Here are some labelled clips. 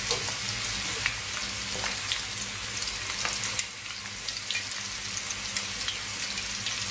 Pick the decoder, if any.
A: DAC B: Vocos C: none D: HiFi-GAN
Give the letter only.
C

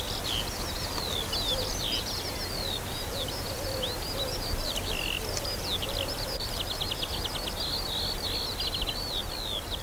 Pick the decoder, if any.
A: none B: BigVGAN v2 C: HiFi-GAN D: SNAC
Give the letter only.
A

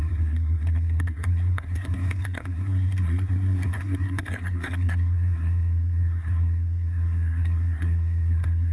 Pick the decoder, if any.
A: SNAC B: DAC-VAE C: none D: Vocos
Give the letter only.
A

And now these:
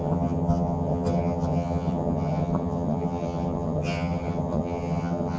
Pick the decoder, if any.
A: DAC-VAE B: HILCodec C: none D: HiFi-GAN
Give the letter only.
D